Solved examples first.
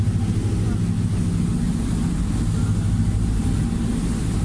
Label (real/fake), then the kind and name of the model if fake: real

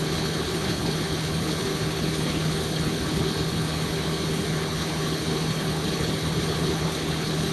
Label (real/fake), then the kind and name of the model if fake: fake, codec, HILCodec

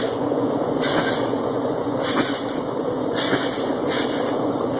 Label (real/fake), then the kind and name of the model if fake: fake, vocoder, Vocos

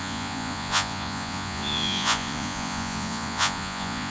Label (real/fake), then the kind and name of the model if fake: fake, vocoder, Vocos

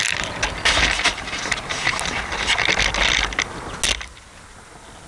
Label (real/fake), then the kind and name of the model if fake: real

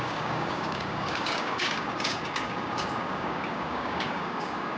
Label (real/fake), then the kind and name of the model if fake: fake, codec, DAC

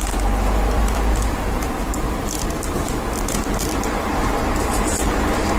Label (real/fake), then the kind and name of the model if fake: fake, vocoder, BigVGAN v2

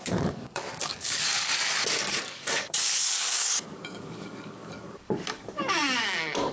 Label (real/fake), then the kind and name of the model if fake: fake, codec, DAC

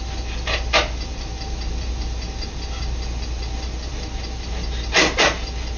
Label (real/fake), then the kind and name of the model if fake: real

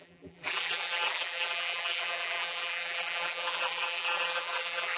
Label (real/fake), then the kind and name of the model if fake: fake, vocoder, BigVGAN v2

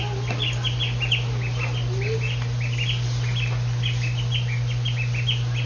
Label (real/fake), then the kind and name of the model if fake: real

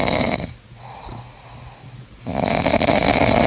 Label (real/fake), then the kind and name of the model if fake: real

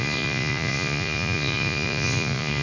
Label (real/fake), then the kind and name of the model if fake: fake, vocoder, Vocos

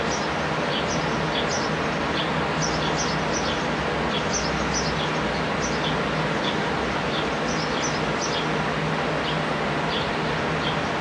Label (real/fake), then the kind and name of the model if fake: real